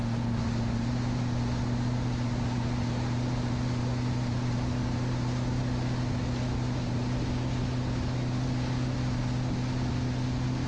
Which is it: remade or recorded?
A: recorded